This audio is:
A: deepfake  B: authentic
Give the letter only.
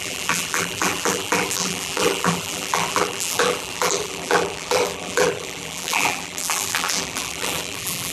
A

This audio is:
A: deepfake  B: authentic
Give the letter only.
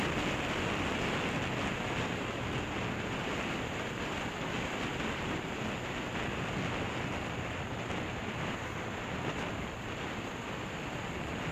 B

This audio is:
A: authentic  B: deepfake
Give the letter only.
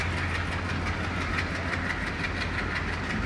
A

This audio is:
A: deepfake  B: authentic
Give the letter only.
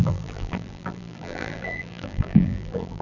A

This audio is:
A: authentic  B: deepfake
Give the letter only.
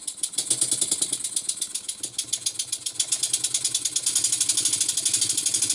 A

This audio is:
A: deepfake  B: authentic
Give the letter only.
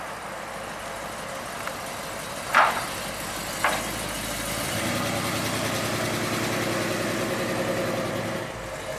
B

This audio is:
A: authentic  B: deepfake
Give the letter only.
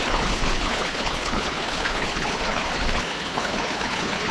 B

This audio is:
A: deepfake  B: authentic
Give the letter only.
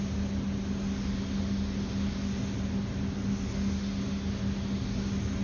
B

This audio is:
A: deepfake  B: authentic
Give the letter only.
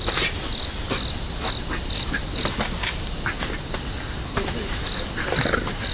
B